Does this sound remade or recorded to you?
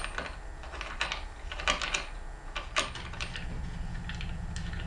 recorded